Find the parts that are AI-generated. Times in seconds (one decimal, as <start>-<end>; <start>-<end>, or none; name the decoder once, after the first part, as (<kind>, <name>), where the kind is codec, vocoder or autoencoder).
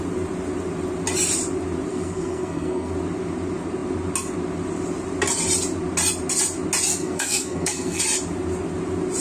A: 1.9-2.9 (codec, SNAC); 6.9-8.0